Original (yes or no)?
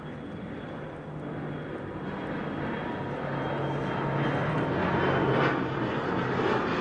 yes